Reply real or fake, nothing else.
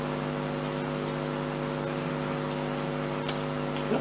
real